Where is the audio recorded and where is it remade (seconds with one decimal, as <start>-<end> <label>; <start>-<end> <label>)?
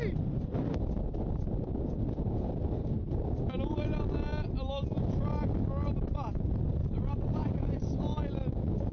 0.0-6.8 recorded; 6.8-8.0 remade; 8.0-8.9 recorded